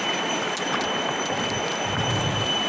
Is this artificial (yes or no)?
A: no